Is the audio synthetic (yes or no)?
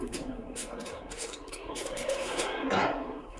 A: yes